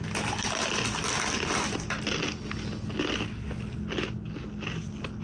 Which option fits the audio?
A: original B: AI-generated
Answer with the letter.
A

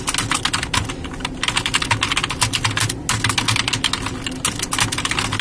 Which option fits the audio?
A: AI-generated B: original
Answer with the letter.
B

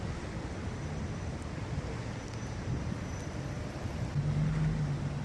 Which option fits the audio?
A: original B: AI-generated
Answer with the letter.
A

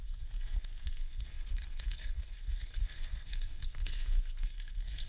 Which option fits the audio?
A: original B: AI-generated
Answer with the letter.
B